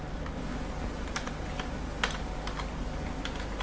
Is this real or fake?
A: real